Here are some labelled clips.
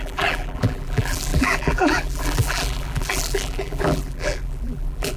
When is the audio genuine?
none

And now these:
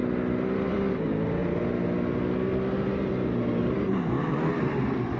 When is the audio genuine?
0.0-0.7; 1.4-4.5

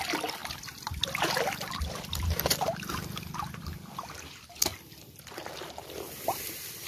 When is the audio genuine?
none

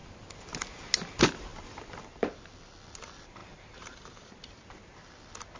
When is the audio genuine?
0.0-3.4; 4.7-5.6

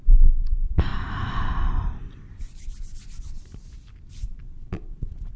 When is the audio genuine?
0.9-4.1

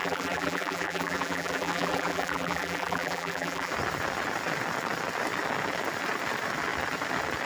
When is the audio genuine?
3.7-7.5

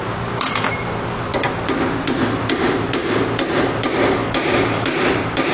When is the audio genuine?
1.3-2.6; 3.0-3.6; 4.2-5.1